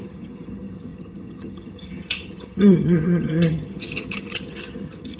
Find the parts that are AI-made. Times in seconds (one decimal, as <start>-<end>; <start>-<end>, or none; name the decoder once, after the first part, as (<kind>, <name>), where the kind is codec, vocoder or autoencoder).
0.0-5.2 (vocoder, HiFi-GAN)